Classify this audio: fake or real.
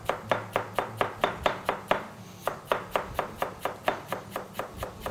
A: real